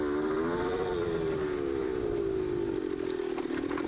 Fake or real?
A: real